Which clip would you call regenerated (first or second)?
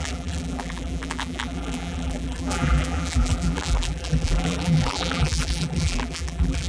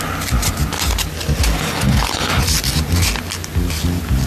first